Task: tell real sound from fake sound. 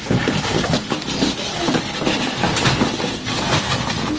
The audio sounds real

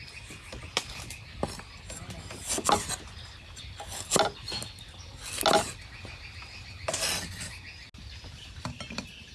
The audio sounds real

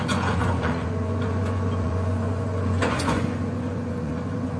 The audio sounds fake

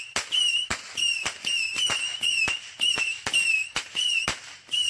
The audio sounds fake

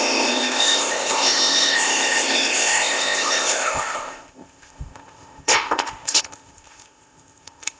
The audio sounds fake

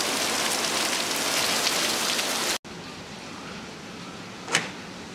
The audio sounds real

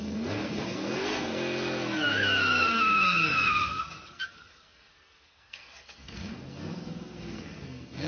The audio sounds fake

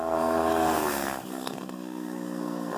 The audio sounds fake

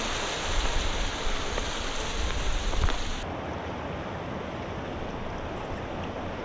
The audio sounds real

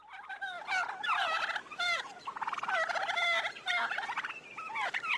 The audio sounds real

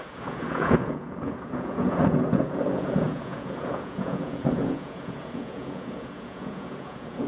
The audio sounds fake